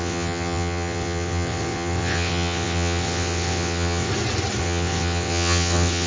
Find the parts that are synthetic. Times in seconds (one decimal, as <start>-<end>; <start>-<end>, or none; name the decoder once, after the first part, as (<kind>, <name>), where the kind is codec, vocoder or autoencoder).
0.0-4.1 (vocoder, WaveNeXt); 4.6-6.1